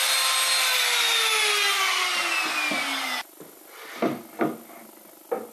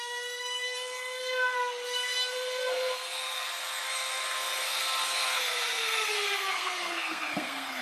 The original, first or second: first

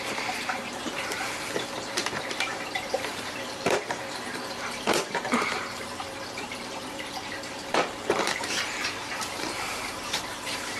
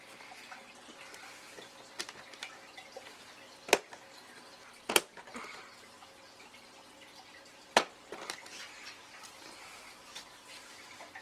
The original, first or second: second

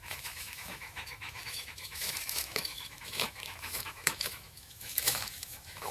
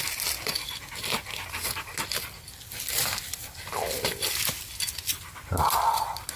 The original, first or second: second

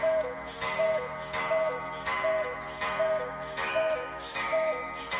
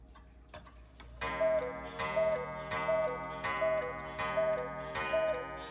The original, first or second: second